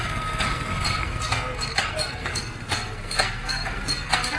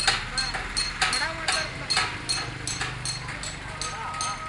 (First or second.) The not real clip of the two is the first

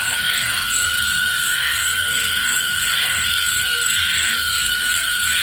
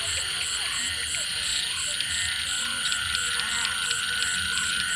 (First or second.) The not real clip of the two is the first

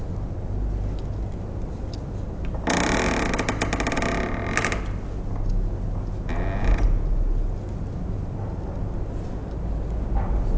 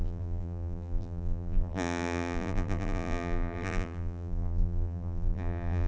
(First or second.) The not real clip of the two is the second